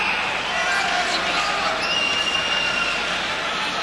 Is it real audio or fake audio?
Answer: real